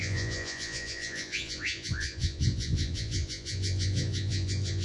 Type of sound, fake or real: fake